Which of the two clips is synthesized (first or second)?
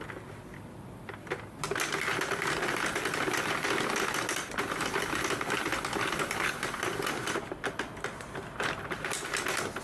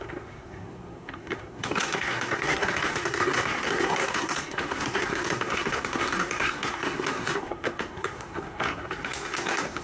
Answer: second